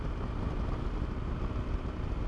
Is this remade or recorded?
recorded